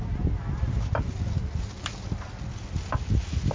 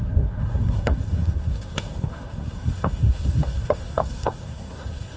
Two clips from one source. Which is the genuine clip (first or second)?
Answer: first